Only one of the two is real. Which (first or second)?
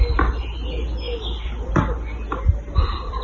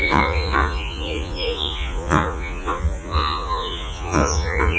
first